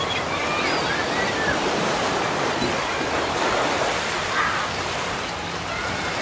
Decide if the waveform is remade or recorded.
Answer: recorded